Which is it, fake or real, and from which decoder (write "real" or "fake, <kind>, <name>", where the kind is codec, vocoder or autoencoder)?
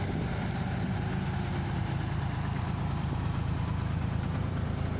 fake, vocoder, BigVGAN v2